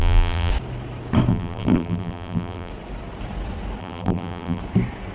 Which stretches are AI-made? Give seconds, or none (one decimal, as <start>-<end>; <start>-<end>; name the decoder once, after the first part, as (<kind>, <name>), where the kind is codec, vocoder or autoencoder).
0.0-0.5 (vocoder, BigVGAN v2); 1.3-2.7; 3.8-4.6